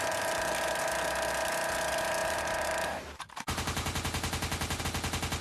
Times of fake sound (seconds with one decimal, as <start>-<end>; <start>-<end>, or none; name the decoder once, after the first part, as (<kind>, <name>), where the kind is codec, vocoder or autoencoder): 2.2-4.8 (vocoder, BigVGAN v2)